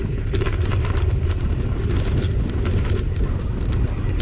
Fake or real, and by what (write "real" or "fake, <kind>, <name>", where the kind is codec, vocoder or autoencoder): fake, vocoder, BigVGAN v2